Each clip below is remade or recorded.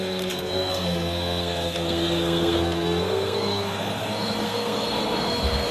remade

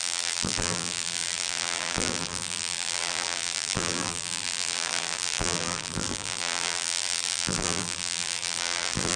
remade